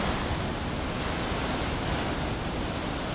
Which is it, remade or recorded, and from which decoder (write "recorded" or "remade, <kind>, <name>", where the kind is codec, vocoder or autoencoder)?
recorded